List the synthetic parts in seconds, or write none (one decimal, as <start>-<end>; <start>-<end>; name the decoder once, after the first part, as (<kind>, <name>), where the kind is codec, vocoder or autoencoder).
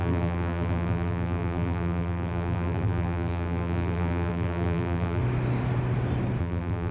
0.0-5.2 (vocoder, BigVGAN v2); 6.4-6.9